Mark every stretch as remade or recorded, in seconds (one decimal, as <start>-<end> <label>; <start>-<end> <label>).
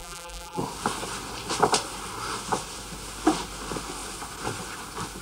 0.0-0.6 remade; 0.6-5.2 recorded